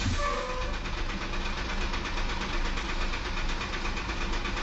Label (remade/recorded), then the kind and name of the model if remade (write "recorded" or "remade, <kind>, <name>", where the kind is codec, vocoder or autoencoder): recorded